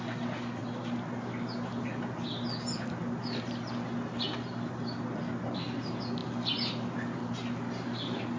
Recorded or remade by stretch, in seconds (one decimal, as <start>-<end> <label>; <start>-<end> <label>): 0.0-8.4 recorded